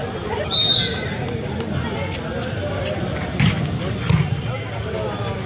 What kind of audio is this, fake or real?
real